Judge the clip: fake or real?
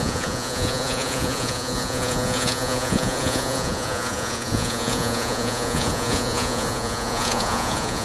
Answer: fake